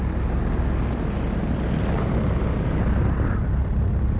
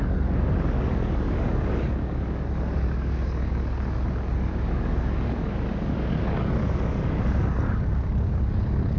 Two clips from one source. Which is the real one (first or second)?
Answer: first